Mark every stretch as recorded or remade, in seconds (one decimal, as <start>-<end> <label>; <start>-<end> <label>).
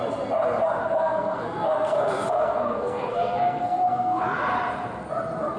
0.0-0.8 recorded; 0.8-4.2 remade; 4.2-5.6 recorded